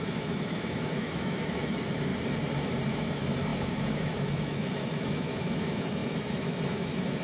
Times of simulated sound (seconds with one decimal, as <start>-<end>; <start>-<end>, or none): 0.0-2.1; 2.9-7.2